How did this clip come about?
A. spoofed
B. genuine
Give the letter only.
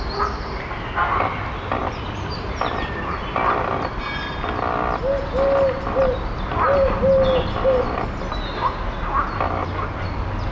B